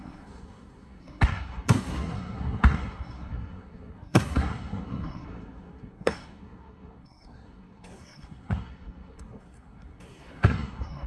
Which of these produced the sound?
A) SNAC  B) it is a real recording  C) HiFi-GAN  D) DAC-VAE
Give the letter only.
A